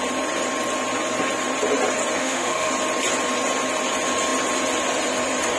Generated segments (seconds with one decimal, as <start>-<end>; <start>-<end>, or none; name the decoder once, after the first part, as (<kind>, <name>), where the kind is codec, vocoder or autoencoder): 2.2-2.7 (autoencoder, DAC-VAE)